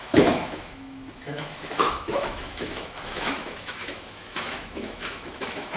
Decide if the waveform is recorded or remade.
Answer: remade